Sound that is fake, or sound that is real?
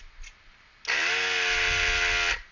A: real